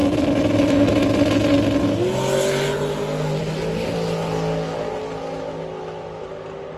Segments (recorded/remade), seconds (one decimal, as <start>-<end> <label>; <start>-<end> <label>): 0.0-6.8 recorded